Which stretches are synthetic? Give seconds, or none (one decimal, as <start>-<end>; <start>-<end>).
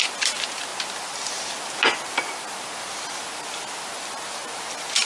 none